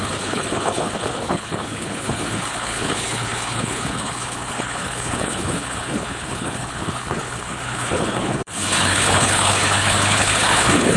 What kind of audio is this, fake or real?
fake